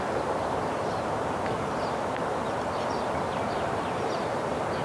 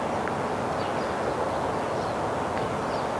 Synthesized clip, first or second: first